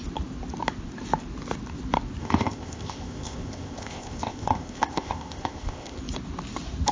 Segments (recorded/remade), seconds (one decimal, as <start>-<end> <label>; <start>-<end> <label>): 0.0-2.2 recorded; 2.2-6.0 remade; 6.0-6.9 recorded